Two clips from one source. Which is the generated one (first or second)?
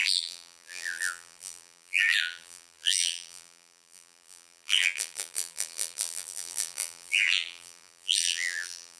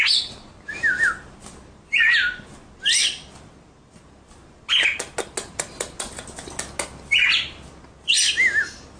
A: first